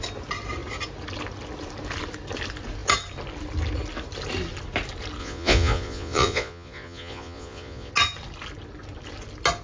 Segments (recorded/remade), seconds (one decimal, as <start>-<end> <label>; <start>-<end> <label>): 0.0-5.2 recorded; 5.2-7.9 remade; 7.9-9.6 recorded